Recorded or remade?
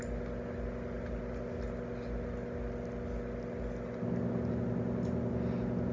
recorded